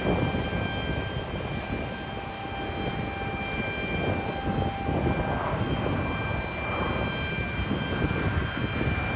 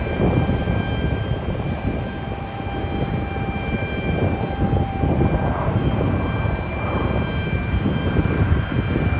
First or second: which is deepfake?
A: second